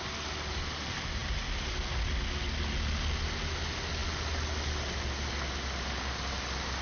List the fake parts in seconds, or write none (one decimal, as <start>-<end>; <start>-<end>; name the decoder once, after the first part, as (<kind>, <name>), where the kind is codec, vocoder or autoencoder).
none